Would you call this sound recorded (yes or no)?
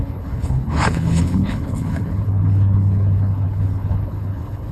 no